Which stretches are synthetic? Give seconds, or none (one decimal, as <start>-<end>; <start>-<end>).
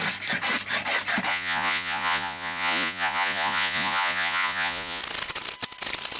1.3-5.0